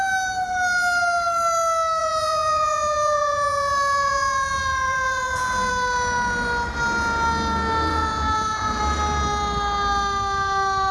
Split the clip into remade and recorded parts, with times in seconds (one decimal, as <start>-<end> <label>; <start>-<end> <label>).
0.0-2.0 recorded; 2.0-5.7 remade; 5.7-7.9 recorded; 7.9-8.8 remade; 8.8-10.9 recorded